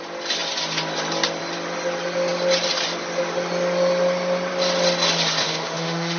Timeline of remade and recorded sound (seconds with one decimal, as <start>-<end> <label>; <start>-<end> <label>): 0.0-5.4 recorded; 5.4-6.2 remade